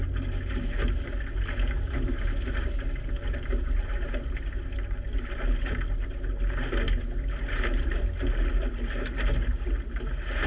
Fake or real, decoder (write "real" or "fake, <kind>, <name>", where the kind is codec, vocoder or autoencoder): real